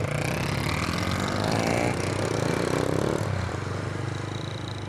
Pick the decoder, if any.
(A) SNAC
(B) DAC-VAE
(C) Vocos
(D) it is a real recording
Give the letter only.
D